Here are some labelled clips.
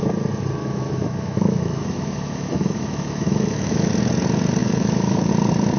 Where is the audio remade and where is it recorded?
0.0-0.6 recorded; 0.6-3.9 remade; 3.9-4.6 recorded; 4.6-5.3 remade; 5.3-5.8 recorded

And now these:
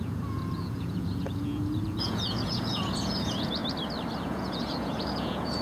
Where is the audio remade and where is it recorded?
0.0-3.6 remade; 3.6-4.2 recorded; 4.2-5.6 remade

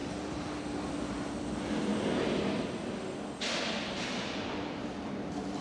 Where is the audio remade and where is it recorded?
0.0-1.9 remade; 1.9-3.9 recorded; 3.9-5.6 remade

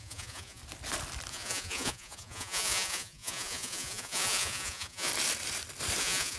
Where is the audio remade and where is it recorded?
0.0-0.6 remade; 0.6-1.3 recorded; 1.3-5.1 remade; 5.1-6.0 recorded; 6.0-6.4 remade

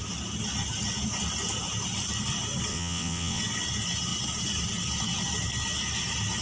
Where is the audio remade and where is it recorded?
0.0-2.7 recorded; 2.7-3.4 remade; 3.4-6.4 recorded